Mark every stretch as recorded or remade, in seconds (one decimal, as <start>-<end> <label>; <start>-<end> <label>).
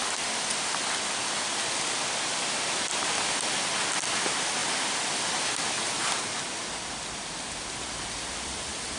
0.0-9.0 recorded